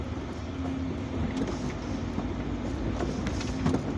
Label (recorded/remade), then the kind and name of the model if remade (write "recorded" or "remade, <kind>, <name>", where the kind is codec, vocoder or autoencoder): recorded